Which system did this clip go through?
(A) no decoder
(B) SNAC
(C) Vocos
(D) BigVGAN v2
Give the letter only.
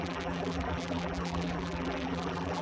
D